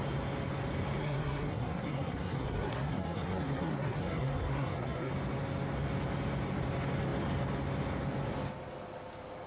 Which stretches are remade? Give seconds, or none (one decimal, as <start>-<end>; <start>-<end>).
1.0-5.1

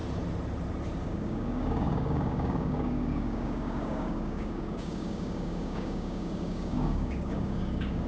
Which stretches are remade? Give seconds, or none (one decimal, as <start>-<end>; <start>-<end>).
1.0-8.1